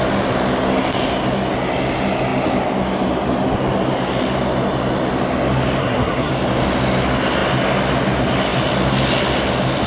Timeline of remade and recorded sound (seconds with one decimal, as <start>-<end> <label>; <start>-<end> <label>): 0.0-5.8 recorded; 5.8-6.3 remade; 6.3-9.9 recorded